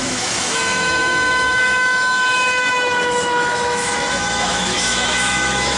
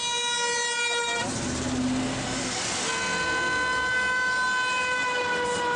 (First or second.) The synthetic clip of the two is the first